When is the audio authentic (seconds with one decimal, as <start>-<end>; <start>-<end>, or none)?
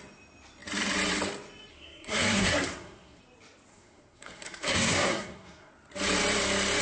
0.0-1.7; 3.2-3.7; 5.7-6.8